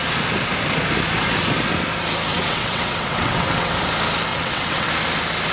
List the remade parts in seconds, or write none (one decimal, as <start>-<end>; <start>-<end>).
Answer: 2.3-3.7; 4.3-4.9